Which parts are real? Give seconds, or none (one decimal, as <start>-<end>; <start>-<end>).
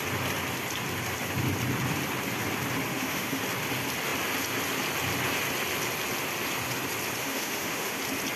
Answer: 0.0-2.9; 3.4-7.2; 8.0-8.4